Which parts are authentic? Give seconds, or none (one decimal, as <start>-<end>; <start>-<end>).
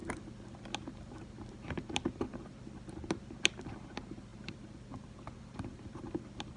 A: 0.0-1.2